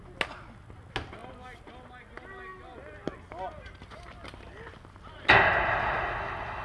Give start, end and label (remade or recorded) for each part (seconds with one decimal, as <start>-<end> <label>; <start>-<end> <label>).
0.0-6.6 recorded